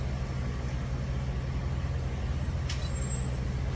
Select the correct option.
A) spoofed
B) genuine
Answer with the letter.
B